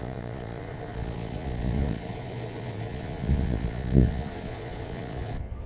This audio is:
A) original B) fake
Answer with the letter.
B